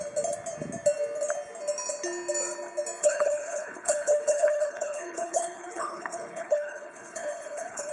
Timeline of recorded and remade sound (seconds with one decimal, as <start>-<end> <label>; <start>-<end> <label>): 0.0-3.0 recorded; 3.0-7.9 remade